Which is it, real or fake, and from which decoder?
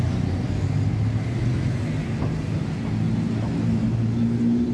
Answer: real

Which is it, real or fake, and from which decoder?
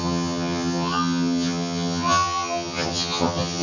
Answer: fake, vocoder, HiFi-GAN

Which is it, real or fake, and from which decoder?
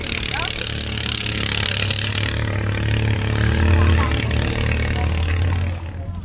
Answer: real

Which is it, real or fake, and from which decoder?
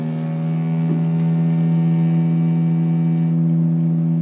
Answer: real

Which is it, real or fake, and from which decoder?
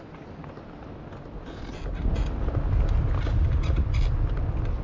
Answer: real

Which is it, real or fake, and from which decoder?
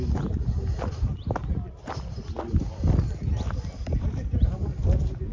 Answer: real